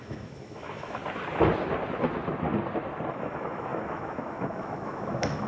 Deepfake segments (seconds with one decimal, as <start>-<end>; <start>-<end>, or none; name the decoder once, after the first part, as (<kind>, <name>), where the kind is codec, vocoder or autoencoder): 0.0-1.0 (autoencoder, DAC-VAE); 3.1-5.5